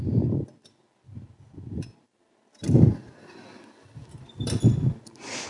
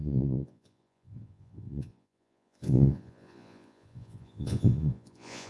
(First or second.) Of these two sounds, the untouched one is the first